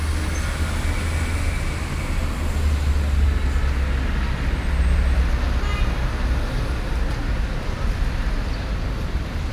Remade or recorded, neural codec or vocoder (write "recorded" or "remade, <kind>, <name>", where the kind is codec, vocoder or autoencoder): recorded